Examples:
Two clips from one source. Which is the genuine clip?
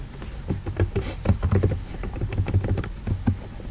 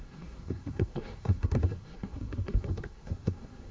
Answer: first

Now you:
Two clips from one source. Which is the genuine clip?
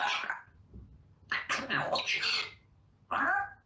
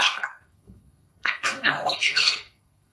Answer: first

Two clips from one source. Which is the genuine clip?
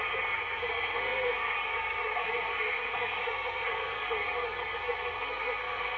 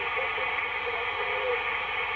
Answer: second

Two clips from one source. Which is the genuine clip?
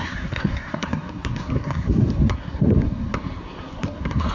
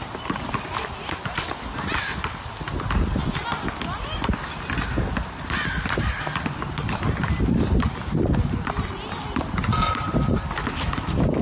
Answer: second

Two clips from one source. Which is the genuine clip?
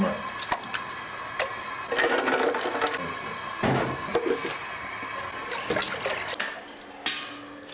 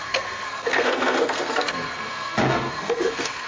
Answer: first